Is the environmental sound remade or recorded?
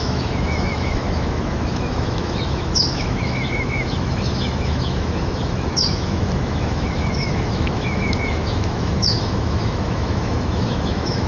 remade